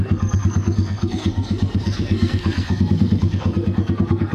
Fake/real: fake